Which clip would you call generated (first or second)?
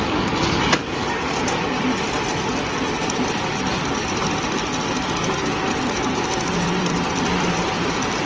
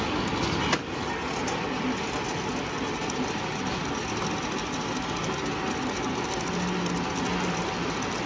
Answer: first